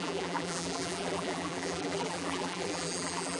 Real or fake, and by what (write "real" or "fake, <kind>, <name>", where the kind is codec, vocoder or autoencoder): fake, vocoder, BigVGAN v2